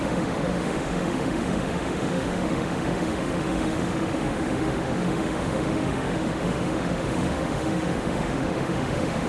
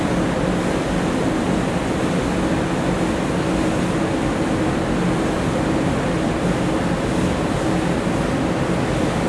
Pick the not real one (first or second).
first